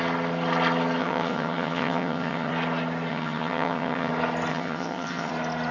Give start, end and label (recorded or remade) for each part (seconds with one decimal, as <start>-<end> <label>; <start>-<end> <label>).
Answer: 0.0-1.0 recorded; 1.0-2.5 remade; 2.5-3.1 recorded; 3.1-4.1 remade; 4.1-4.5 recorded; 4.5-5.3 remade; 5.3-5.7 recorded